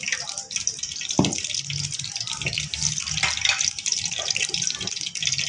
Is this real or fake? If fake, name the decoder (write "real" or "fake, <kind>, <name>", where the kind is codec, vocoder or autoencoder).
real